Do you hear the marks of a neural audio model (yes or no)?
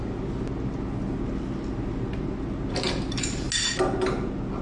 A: no